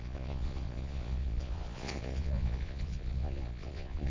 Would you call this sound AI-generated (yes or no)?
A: yes